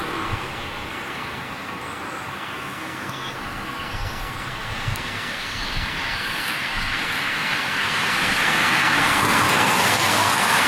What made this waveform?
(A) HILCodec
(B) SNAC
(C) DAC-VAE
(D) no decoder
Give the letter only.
B